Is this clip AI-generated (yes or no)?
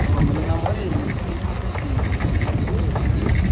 no